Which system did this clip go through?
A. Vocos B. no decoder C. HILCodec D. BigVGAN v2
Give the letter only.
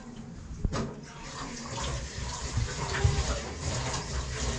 D